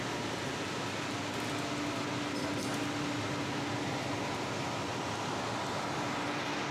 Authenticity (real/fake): real